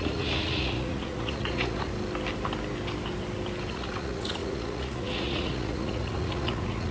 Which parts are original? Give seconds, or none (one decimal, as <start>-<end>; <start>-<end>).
1.9-3.7